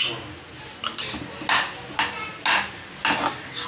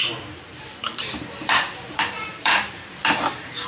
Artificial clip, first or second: second